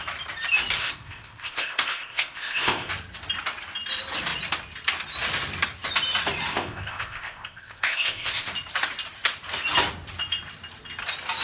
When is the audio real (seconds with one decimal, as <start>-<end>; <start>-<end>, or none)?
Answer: 0.0-0.8; 2.9-6.5; 8.5-11.4